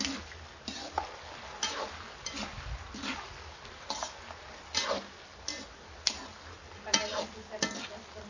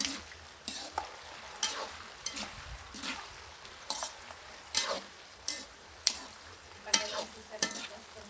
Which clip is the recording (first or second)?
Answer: first